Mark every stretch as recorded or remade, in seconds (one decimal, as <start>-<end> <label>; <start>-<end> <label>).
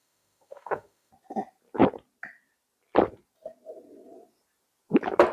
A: 0.0-1.1 remade; 1.1-5.3 recorded